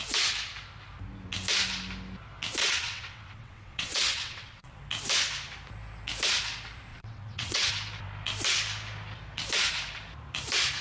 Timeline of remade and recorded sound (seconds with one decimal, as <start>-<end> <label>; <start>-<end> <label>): 0.0-2.6 recorded; 2.6-4.8 remade; 4.8-6.9 recorded; 6.9-7.7 remade; 7.7-10.8 recorded